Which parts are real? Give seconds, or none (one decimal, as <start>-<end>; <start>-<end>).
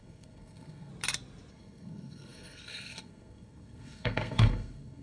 0.9-1.5